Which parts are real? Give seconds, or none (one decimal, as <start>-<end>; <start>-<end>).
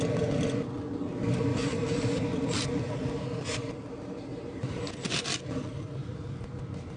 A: 0.0-1.5; 4.8-6.0